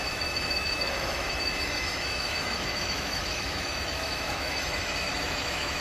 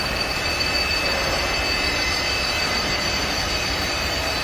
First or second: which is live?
second